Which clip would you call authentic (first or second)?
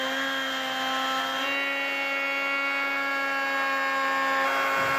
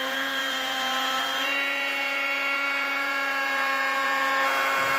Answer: first